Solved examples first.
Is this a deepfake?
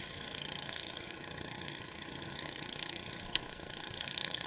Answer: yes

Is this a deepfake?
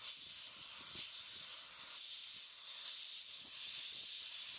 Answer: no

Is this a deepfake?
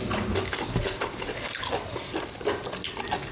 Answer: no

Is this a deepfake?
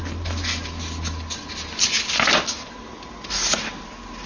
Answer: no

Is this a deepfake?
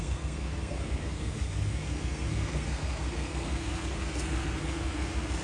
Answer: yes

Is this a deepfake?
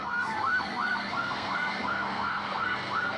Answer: yes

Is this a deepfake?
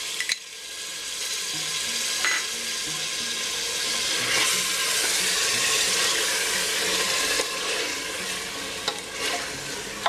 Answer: no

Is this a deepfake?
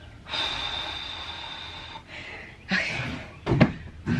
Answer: no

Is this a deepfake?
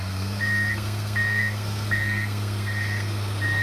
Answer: yes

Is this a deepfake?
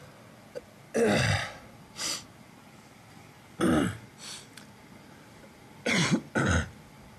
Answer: no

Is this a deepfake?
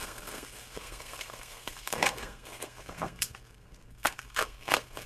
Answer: yes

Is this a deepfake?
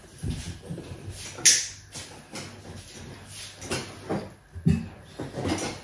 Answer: no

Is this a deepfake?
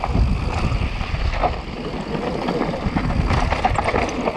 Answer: no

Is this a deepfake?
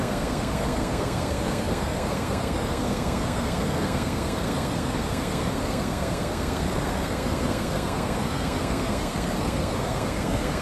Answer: yes